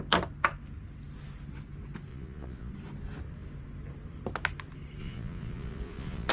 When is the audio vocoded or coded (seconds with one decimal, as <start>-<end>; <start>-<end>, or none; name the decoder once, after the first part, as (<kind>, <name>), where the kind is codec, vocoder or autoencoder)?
2.1-2.7 (vocoder, Vocos); 5.0-6.3